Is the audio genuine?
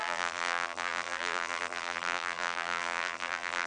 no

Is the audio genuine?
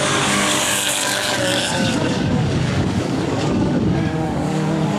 no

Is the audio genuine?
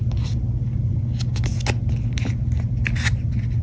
yes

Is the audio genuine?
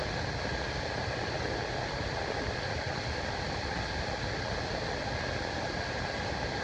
yes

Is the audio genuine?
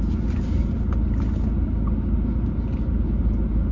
yes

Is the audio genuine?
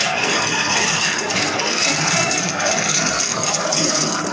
no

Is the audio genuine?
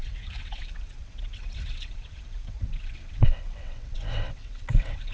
no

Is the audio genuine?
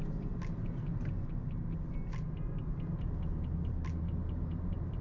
yes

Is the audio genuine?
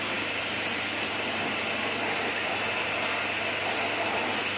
yes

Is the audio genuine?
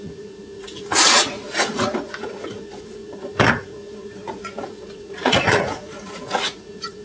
no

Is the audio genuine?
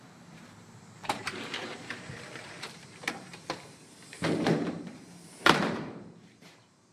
no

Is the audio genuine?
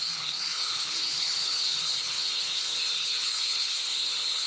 no